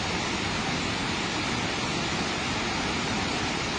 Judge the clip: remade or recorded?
remade